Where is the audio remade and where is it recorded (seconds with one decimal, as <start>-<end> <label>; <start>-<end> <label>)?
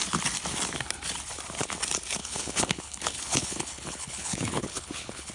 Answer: 0.0-2.2 recorded; 2.2-5.3 remade